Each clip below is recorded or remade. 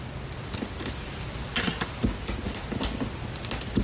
recorded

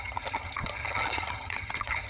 remade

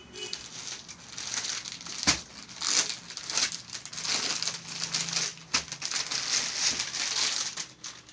recorded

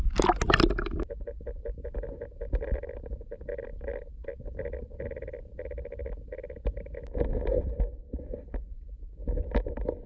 recorded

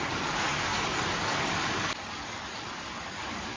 remade